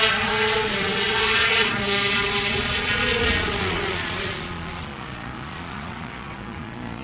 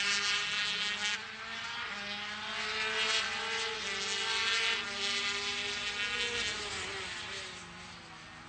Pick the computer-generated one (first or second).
first